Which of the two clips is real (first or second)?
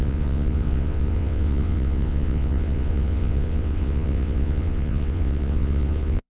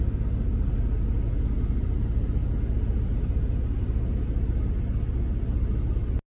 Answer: second